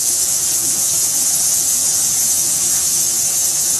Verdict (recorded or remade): remade